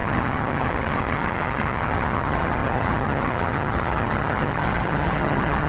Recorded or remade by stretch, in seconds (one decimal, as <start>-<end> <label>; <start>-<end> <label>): 0.0-5.7 remade